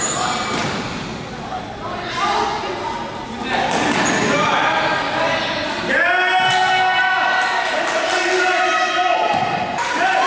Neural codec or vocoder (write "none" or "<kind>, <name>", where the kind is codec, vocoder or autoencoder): none